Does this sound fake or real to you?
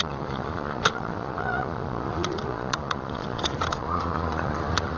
fake